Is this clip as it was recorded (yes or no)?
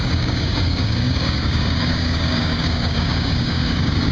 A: no